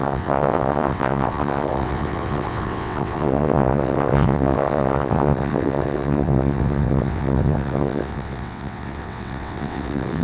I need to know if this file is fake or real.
fake